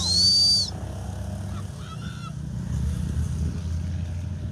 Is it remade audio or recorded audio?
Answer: recorded